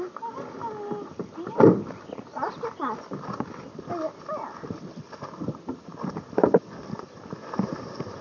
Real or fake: real